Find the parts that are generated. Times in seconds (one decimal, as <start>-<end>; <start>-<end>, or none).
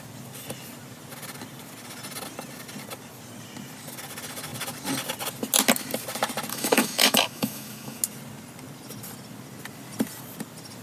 6.5-8.0